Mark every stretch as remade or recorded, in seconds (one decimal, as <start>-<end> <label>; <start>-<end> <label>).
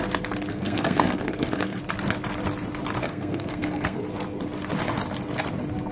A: 0.0-0.5 recorded; 0.5-1.8 remade; 1.8-3.0 recorded; 3.0-4.0 remade; 4.0-5.9 recorded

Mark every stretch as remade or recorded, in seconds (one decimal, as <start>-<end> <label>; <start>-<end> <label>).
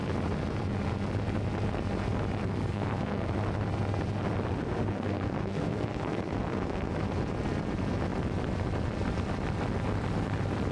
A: 0.0-2.4 recorded; 2.4-3.3 remade; 3.3-4.5 recorded; 4.5-6.9 remade; 6.9-10.7 recorded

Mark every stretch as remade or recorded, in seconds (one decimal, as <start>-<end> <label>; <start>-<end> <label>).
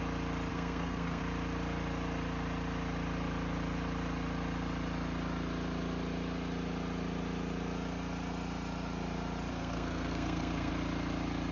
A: 0.0-0.5 recorded; 0.5-1.2 remade; 1.2-9.5 recorded; 9.5-10.7 remade; 10.7-11.5 recorded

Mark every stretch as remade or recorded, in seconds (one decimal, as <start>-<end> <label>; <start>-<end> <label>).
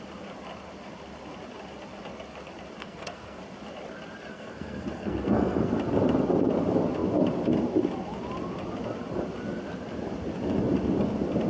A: 0.0-2.8 recorded; 2.8-3.4 remade; 3.4-4.3 recorded; 4.3-5.7 remade; 5.7-11.5 recorded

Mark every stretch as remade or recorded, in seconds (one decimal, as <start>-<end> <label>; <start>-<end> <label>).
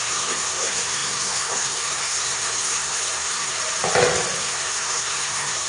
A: 0.0-3.6 remade; 3.6-4.4 recorded; 4.4-5.7 remade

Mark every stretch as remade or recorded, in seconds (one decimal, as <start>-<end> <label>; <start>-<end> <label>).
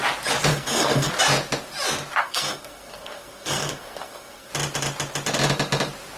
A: 0.0-0.5 recorded; 0.5-1.1 remade; 1.1-2.2 recorded; 2.2-4.5 remade; 4.5-6.2 recorded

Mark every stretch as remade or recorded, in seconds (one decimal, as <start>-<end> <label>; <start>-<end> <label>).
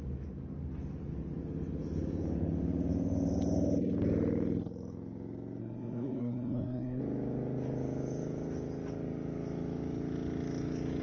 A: 0.0-5.6 recorded; 5.6-7.0 remade; 7.0-11.0 recorded